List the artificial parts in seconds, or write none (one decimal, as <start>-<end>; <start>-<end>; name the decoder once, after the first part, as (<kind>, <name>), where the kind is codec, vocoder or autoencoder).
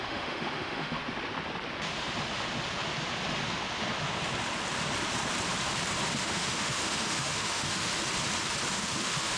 0.0-1.0 (autoencoder, DAC-VAE); 6.2-7.9; 8.7-9.4